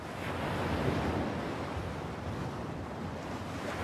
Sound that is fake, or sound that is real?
real